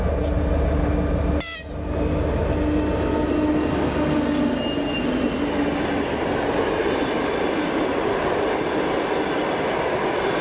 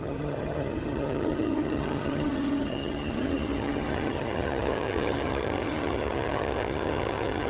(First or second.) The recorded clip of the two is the first